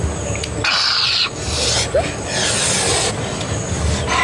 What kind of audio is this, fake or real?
real